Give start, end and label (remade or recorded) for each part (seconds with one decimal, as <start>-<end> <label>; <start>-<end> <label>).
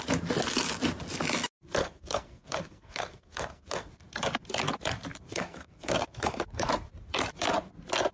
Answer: 0.0-1.8 recorded; 1.8-3.9 remade; 3.9-5.3 recorded; 5.3-6.7 remade; 6.7-8.1 recorded